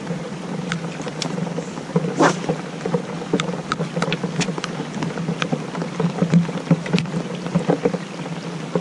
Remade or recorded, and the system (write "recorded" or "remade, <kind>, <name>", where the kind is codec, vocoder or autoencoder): recorded